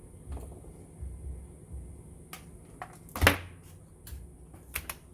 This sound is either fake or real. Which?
real